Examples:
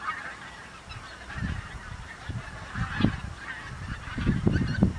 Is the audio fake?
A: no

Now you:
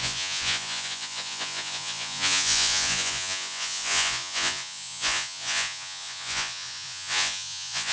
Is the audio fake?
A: yes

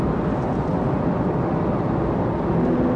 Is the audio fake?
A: no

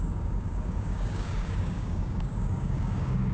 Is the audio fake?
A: yes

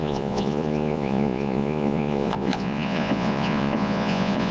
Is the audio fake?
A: yes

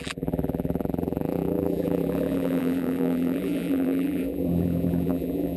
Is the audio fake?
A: yes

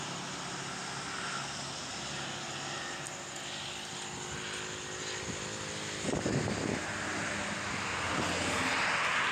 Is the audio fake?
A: no